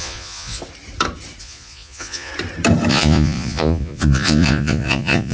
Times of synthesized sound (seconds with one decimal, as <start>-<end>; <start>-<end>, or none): 0.0-0.6; 1.4-2.3; 2.9-5.3